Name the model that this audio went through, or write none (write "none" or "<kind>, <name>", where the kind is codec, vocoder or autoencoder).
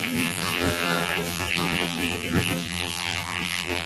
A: vocoder, BigVGAN v2